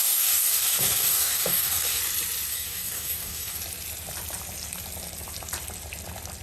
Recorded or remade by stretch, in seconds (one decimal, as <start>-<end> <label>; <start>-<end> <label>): 0.0-2.0 remade; 2.0-2.5 recorded; 2.5-3.6 remade; 3.6-6.4 recorded